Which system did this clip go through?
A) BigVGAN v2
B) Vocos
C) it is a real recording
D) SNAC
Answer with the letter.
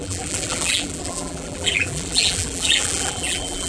A